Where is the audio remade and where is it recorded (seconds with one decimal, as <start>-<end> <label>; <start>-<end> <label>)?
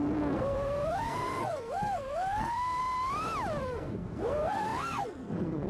0.0-2.8 remade; 2.8-3.6 recorded; 3.6-5.7 remade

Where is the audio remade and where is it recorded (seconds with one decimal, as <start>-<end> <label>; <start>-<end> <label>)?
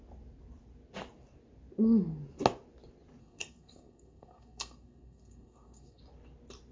0.0-3.2 recorded; 3.2-6.0 remade; 6.0-6.7 recorded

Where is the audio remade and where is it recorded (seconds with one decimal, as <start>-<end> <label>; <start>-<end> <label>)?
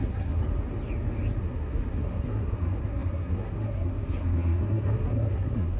0.0-0.4 remade; 0.4-1.4 recorded; 1.4-5.8 remade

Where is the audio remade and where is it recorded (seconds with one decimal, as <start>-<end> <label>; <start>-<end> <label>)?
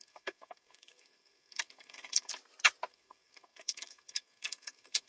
0.0-2.3 remade; 2.3-2.9 recorded; 2.9-5.1 remade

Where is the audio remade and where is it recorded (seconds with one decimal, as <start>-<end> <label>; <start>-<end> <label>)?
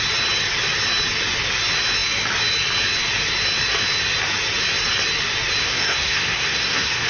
0.0-5.6 recorded; 5.6-7.1 remade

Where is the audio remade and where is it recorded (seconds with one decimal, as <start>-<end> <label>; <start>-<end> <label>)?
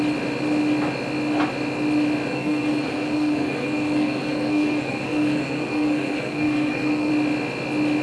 0.0-2.3 recorded; 2.3-7.1 remade; 7.1-8.0 recorded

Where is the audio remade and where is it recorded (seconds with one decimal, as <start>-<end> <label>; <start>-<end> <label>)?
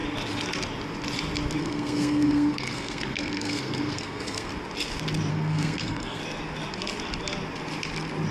0.0-1.6 recorded; 1.6-4.5 remade; 4.5-5.3 recorded; 5.3-6.2 remade; 6.2-8.3 recorded